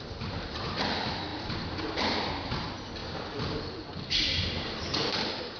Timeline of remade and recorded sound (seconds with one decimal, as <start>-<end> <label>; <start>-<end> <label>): 0.0-5.6 recorded